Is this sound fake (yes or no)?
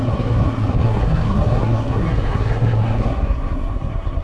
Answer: yes